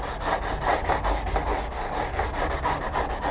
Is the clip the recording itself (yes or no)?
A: yes